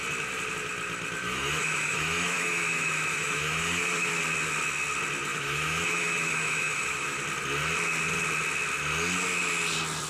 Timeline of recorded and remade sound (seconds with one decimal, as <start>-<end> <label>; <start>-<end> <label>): 0.0-1.2 recorded; 1.2-4.2 remade; 4.2-5.3 recorded; 5.3-7.2 remade; 7.2-10.1 recorded

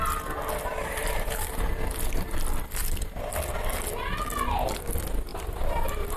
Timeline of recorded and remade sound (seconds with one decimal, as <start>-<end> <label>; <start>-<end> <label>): 0.0-1.0 recorded; 1.0-1.8 remade; 1.8-5.3 recorded; 5.3-6.2 remade

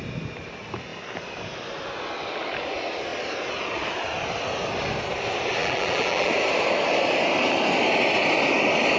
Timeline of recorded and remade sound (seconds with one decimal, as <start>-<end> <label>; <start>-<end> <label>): 0.0-5.6 recorded; 5.6-6.3 remade; 6.3-9.0 recorded

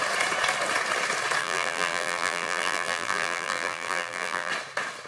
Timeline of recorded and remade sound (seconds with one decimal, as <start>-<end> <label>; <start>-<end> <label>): 0.0-1.4 recorded; 1.4-4.5 remade; 4.5-5.1 recorded

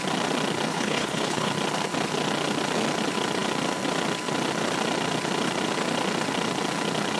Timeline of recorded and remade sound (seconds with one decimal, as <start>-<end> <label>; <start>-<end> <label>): 0.0-0.7 recorded; 0.7-1.5 remade; 1.5-7.2 recorded

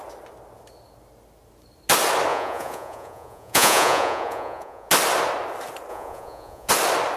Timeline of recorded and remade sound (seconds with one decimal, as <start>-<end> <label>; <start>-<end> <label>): 0.0-2.3 recorded; 2.3-4.9 remade; 4.9-5.9 recorded; 5.9-6.7 remade; 6.7-7.2 recorded

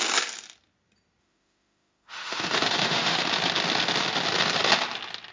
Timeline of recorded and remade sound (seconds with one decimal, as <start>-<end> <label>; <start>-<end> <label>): 0.0-1.2 recorded; 1.2-3.2 remade; 3.2-5.3 recorded